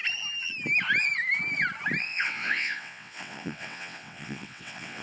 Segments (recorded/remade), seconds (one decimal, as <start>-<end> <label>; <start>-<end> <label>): 0.0-2.0 recorded; 2.0-5.0 remade